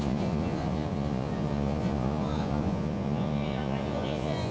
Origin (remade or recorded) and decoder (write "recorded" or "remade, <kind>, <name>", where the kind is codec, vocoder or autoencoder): remade, vocoder, Vocos